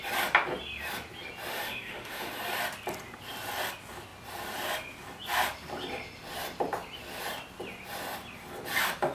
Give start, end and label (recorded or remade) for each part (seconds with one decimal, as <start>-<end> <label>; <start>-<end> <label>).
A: 0.0-1.5 recorded; 1.5-2.3 remade; 2.3-9.1 recorded